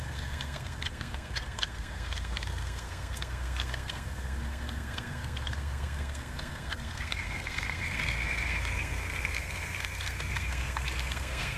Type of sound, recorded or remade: remade